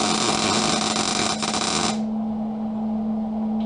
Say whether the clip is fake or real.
real